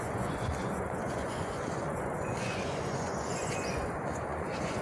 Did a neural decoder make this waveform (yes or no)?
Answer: yes